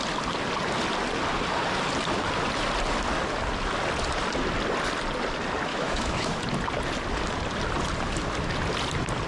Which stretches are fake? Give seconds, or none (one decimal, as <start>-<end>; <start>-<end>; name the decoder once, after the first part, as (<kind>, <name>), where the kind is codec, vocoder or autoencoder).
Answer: 5.7-6.4 (autoencoder, DAC-VAE)